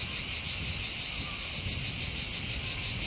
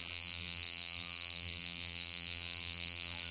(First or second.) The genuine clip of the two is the first